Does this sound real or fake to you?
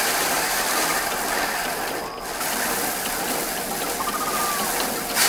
real